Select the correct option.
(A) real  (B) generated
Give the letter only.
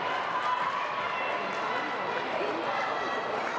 A